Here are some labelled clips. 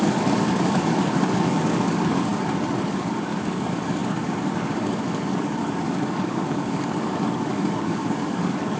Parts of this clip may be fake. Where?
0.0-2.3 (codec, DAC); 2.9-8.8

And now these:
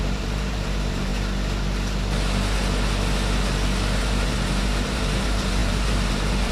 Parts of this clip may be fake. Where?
0.0-1.1 (vocoder, BigVGAN v2); 4.0-6.5

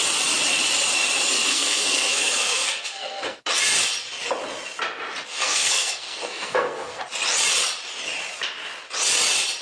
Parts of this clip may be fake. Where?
1.5-3.5 (codec, SNAC); 5.3-7.0